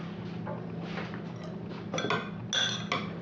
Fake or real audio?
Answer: real